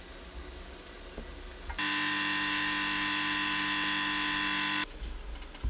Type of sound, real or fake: real